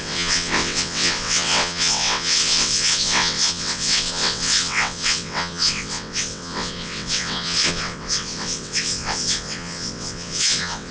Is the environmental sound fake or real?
fake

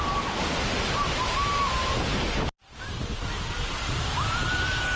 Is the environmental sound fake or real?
real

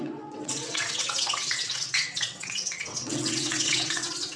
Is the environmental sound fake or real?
fake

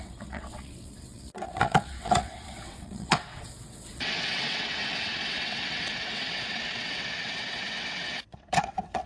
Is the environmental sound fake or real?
fake